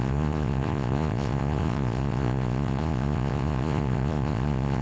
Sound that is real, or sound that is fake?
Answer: fake